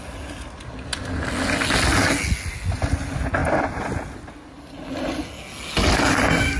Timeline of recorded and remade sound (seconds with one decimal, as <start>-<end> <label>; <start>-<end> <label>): 0.0-6.6 recorded